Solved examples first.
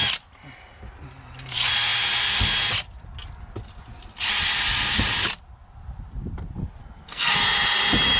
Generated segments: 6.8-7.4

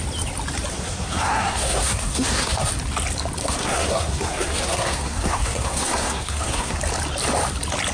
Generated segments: 0.7-2.7; 3.4-6.8

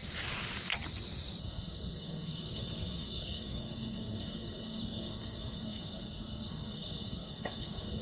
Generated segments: 1.4-8.0

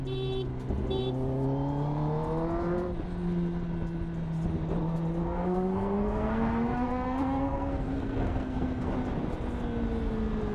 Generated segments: 5.2-8.9

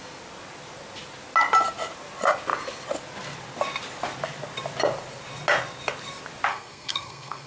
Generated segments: 6.5-7.5

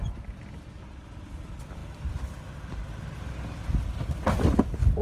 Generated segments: none